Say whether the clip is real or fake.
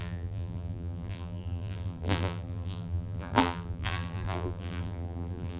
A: fake